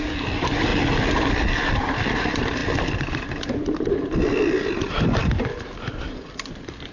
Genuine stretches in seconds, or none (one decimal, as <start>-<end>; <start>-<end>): 0.7-1.7; 2.6-4.6